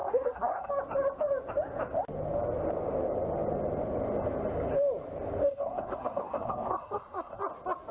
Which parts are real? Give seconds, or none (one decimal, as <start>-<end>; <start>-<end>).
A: 0.7-5.4; 7.4-7.9